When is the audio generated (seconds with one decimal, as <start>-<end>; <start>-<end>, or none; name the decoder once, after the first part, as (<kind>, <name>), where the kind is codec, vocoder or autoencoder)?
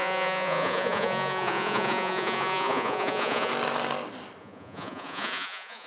0.0-3.5 (vocoder, Vocos); 4.4-5.9